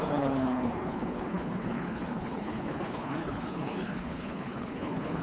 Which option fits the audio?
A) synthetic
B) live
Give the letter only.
A